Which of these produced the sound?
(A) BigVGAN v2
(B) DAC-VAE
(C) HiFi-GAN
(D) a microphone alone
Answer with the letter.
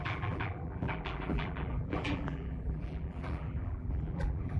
A